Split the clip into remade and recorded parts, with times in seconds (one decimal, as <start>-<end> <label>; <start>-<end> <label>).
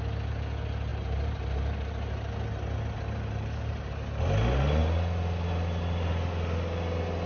0.0-7.3 recorded